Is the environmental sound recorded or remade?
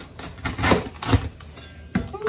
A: recorded